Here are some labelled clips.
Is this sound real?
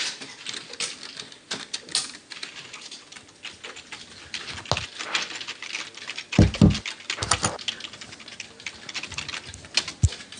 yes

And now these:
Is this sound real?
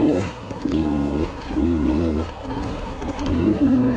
no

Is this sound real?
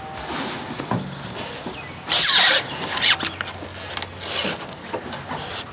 yes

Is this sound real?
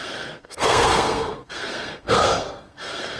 no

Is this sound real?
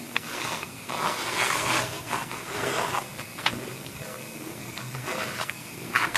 no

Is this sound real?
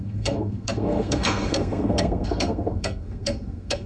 no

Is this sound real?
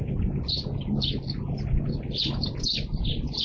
yes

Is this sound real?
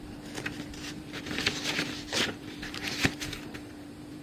no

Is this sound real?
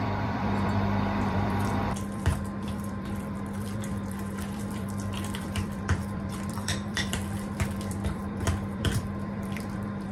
no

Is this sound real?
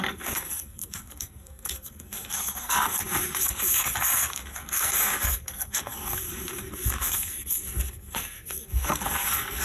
no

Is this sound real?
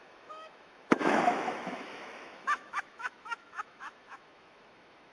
no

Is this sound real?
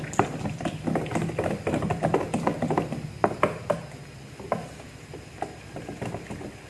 yes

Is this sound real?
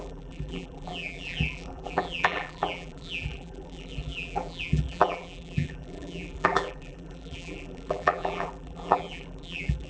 no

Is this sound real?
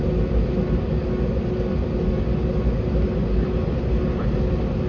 yes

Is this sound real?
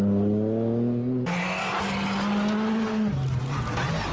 yes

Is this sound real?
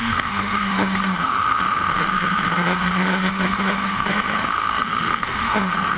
no